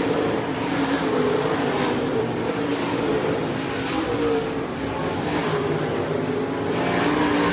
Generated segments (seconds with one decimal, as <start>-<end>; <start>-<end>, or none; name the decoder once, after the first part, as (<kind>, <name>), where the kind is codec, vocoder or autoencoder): 0.0-5.4 (vocoder, BigVGAN v2)